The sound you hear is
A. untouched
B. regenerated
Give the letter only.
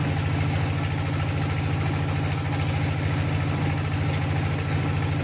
A